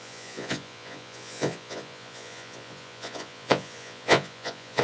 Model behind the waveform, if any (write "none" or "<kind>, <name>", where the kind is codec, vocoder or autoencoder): vocoder, Vocos